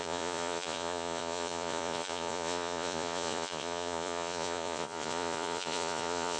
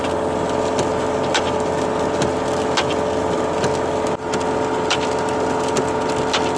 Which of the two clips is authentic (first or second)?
second